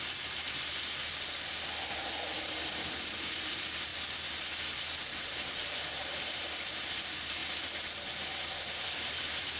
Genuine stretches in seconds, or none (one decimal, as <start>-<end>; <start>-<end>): 1.0-1.9; 3.9-5.0; 7.4-8.6